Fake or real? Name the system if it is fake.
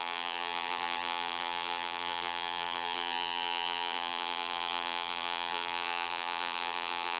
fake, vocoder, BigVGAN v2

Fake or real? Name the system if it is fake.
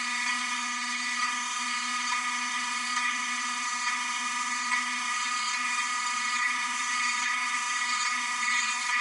fake, codec, HILCodec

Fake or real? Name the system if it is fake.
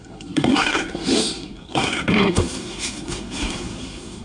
fake, codec, SNAC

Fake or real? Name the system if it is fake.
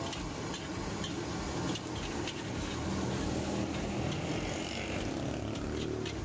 real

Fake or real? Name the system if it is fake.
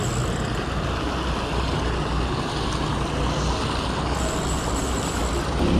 real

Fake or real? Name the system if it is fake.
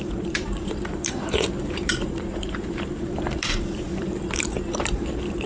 fake, vocoder, BigVGAN v2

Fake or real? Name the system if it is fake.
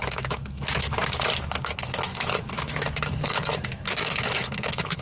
fake, autoencoder, DAC-VAE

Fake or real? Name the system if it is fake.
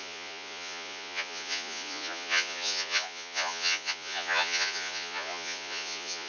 fake, vocoder, Vocos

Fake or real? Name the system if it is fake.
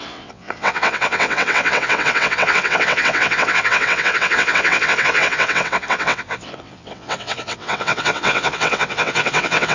fake, vocoder, WaveNeXt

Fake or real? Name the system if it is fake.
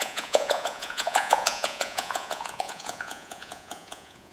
fake, vocoder, Vocos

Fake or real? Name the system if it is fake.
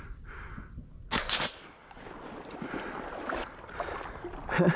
real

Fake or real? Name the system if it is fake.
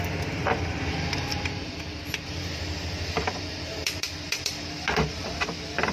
fake, vocoder, BigVGAN v2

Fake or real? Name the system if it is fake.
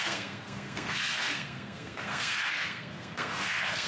fake, codec, SNAC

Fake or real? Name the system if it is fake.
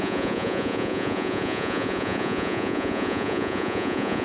fake, vocoder, Vocos